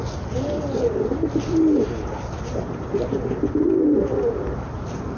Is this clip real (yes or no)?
yes